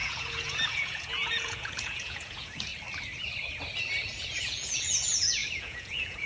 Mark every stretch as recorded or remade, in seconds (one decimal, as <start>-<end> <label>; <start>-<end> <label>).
0.0-2.7 remade; 2.7-4.2 recorded; 4.2-6.3 remade